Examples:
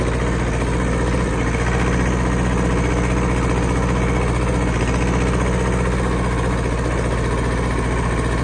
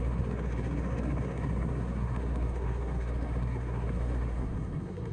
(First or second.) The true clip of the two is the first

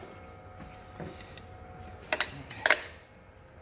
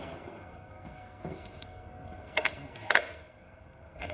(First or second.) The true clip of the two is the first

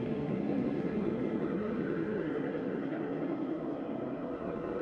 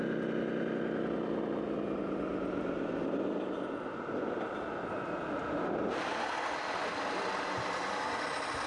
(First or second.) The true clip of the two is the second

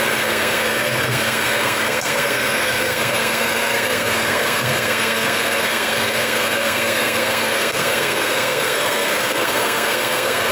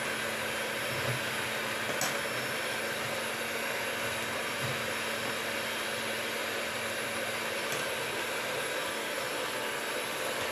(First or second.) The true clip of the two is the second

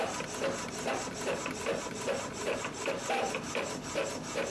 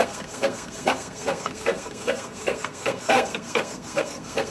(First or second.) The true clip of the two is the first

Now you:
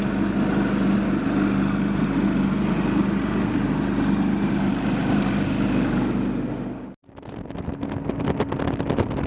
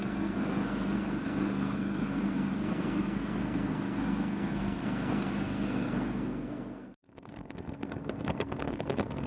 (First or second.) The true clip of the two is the first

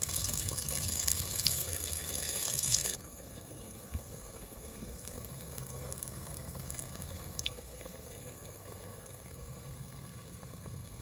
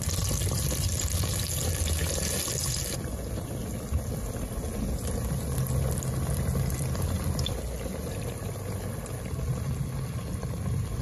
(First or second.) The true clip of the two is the second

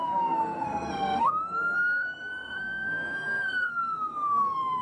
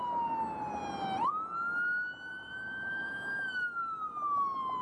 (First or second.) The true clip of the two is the second